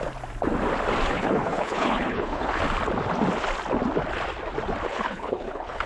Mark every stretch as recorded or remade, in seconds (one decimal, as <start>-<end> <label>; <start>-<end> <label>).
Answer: 0.0-1.1 recorded; 1.1-2.6 remade; 2.6-4.9 recorded; 4.9-5.9 remade